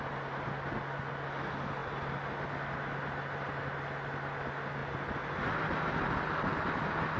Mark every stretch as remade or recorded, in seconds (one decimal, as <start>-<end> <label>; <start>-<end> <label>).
0.0-7.2 recorded